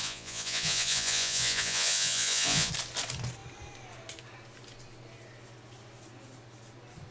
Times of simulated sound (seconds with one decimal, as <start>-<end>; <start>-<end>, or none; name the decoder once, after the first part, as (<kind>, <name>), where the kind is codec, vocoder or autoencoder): 0.0-2.7 (vocoder, Vocos)